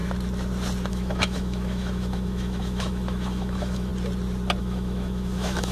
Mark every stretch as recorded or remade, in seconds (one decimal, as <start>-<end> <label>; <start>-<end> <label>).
0.0-0.9 recorded; 0.9-3.9 remade; 3.9-4.6 recorded; 4.6-5.7 remade